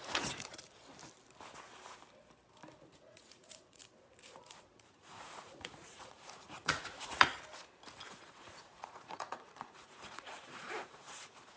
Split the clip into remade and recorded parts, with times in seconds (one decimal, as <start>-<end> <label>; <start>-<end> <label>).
0.0-0.5 remade; 0.5-2.9 recorded; 2.9-3.8 remade; 3.8-4.6 recorded; 4.6-7.3 remade; 7.3-8.1 recorded; 8.1-11.6 remade